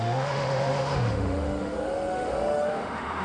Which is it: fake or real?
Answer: fake